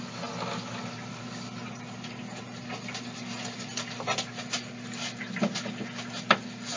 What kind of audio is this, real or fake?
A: real